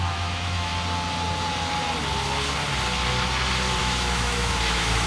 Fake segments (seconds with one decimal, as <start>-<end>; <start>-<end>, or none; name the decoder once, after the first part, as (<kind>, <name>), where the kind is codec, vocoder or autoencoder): 0.0-0.7 (autoencoder, DAC-VAE); 3.8-5.1